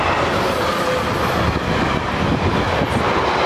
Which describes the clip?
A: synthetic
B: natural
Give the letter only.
B